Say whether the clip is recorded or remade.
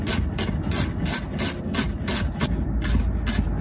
recorded